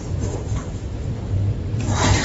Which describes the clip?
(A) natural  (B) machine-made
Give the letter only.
B